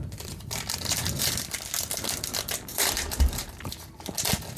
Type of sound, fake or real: fake